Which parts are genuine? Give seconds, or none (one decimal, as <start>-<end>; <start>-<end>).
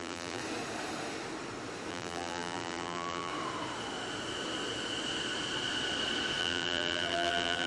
0.4-1.9; 3.3-6.4